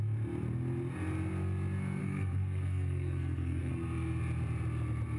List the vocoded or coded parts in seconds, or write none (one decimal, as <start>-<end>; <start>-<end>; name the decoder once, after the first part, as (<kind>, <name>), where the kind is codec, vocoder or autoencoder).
2.0-3.7 (codec, SNAC)